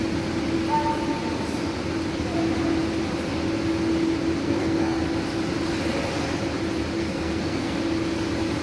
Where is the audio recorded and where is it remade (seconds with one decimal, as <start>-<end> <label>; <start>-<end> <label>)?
0.0-4.4 recorded; 4.4-5.0 remade; 5.0-7.0 recorded; 7.0-7.8 remade; 7.8-8.6 recorded